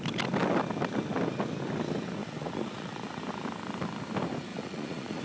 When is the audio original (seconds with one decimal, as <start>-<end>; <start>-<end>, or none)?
0.0-2.2; 3.2-4.5